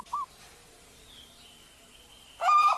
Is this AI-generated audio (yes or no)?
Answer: no